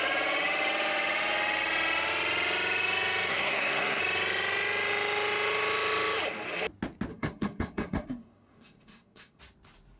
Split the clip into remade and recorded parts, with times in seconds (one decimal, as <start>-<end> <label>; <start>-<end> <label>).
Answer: 0.0-3.3 recorded; 3.3-4.0 remade; 4.0-7.1 recorded; 7.1-9.4 remade; 9.4-10.0 recorded